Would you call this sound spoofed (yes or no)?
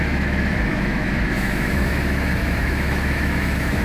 yes